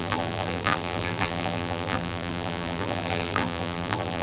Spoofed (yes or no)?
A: yes